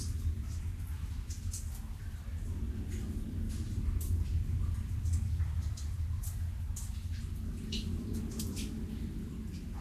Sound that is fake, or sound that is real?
real